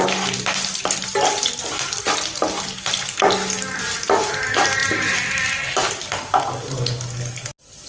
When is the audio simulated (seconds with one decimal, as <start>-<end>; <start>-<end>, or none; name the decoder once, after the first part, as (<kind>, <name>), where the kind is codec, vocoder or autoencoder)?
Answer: 4.8-6.6 (vocoder, BigVGAN v2)